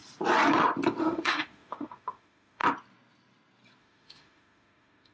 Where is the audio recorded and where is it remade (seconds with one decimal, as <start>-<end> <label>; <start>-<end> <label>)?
0.0-1.0 recorded; 1.0-2.6 remade; 2.6-3.8 recorded; 3.8-5.1 remade